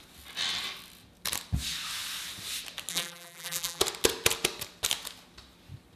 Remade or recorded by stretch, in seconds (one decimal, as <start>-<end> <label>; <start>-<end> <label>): 0.0-2.9 recorded; 2.9-3.8 remade; 3.8-6.0 recorded